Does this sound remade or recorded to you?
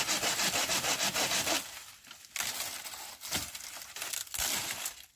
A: recorded